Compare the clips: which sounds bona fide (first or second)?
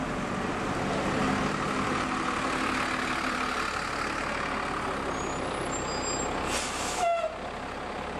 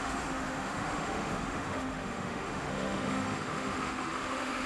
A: first